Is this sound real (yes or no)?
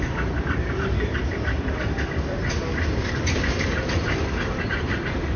no